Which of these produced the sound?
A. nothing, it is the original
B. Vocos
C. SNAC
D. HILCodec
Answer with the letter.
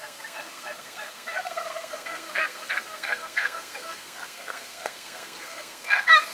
C